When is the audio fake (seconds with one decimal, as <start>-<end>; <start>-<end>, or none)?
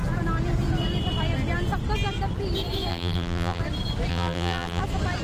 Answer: 2.9-3.6; 4.1-4.8